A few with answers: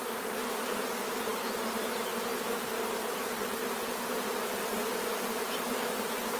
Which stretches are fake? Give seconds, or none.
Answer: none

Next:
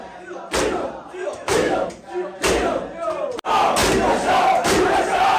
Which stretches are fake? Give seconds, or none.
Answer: 1.2-1.9 (autoencoder, DAC-VAE)

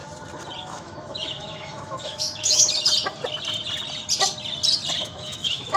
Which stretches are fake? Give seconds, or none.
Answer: 0.6-2.6 (autoencoder, DAC-VAE); 5.0-5.8